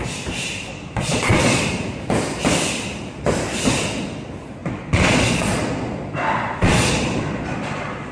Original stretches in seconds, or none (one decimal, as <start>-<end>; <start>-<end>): 0.0-0.7; 1.6-4.6